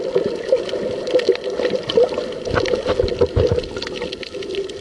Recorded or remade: recorded